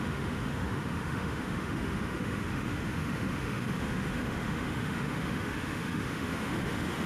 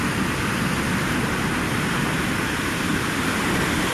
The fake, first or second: first